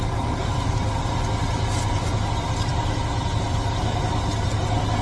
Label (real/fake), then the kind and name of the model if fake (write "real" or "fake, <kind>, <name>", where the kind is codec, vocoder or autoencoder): fake, vocoder, BigVGAN v2